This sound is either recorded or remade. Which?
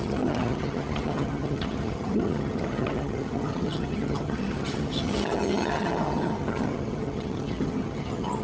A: remade